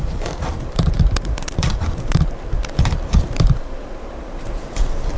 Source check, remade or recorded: remade